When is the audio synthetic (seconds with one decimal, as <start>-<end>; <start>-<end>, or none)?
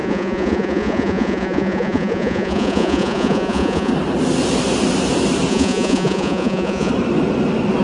0.0-3.9; 5.5-6.9